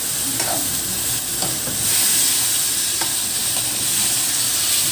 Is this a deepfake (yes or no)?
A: no